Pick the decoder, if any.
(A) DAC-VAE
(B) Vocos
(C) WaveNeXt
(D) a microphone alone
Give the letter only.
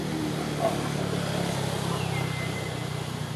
D